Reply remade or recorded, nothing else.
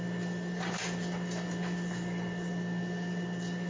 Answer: recorded